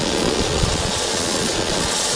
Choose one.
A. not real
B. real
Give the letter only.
A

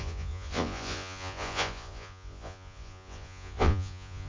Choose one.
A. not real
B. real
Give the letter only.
A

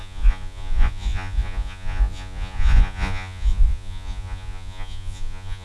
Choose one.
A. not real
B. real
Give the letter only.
A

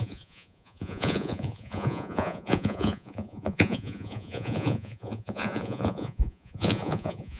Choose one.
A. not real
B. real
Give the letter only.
A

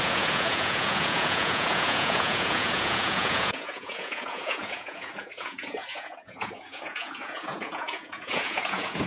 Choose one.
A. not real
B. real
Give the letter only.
A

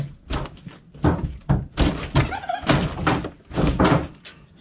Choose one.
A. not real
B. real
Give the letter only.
B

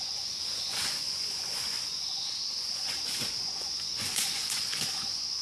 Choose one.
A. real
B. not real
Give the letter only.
B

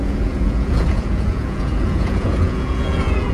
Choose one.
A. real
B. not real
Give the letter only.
B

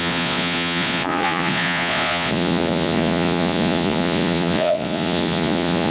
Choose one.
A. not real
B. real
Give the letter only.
A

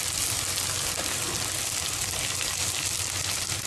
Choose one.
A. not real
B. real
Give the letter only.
B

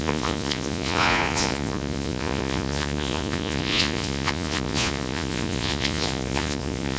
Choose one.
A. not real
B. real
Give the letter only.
A